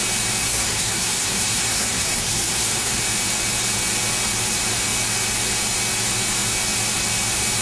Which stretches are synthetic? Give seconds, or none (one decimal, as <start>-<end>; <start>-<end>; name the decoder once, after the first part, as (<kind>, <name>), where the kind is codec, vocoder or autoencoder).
0.4-3.0 (codec, SNAC)

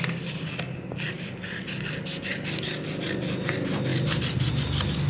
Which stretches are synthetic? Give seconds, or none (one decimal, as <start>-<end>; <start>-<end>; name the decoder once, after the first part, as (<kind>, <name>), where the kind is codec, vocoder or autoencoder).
none

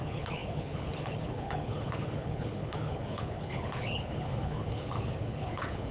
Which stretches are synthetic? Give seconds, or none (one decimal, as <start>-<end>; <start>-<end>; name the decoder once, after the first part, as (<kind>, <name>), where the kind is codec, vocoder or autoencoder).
0.0-5.9 (codec, HILCodec)